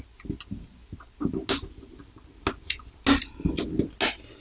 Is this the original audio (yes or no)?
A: yes